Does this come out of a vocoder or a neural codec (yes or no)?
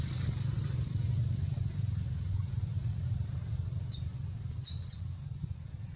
no